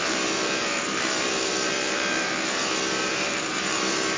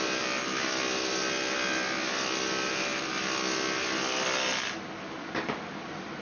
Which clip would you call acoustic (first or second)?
second